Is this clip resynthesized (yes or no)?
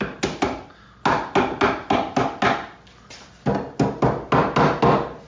no